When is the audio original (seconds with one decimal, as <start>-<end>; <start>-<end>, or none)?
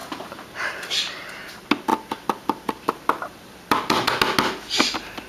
0.9-1.9; 4.1-5.3